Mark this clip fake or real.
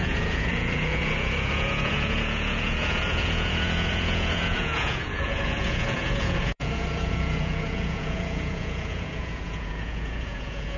fake